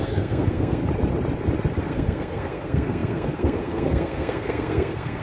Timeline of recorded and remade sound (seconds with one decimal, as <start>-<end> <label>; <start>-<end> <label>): 0.0-0.8 remade; 0.8-1.8 recorded; 1.8-5.2 remade